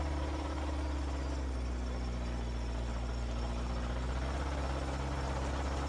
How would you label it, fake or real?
real